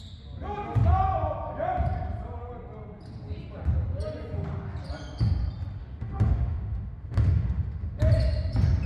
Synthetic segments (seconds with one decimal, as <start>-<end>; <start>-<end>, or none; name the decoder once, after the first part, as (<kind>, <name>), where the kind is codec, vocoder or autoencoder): 5.8-8.0 (autoencoder, DAC-VAE)